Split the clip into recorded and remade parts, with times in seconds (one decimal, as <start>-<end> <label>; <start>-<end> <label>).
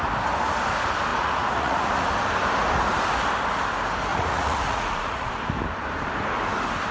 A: 0.0-1.1 recorded; 1.1-2.1 remade; 2.1-4.1 recorded; 4.1-5.3 remade; 5.3-6.9 recorded